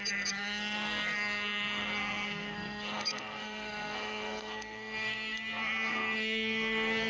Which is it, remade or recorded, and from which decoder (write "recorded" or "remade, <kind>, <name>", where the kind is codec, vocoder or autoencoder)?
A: remade, codec, SNAC